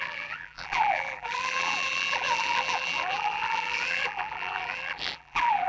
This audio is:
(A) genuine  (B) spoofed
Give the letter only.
B